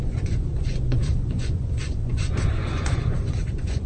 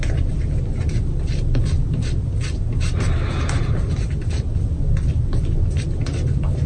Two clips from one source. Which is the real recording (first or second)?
second